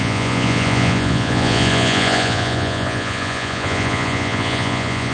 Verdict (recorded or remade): remade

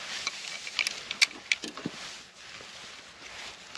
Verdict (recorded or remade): recorded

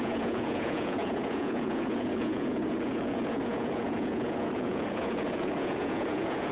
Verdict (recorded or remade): remade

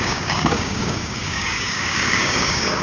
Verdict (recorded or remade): remade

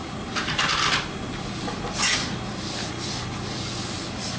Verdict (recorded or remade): recorded